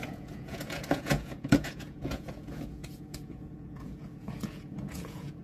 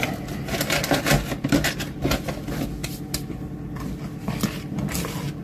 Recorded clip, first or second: second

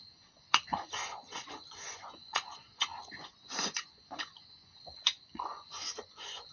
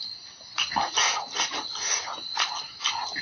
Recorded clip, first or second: second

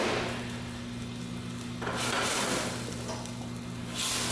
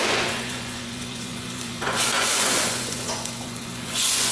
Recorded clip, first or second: first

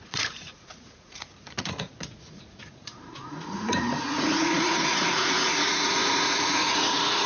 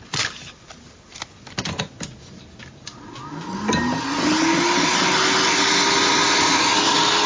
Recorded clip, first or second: second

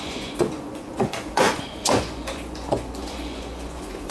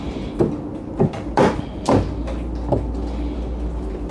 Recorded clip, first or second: second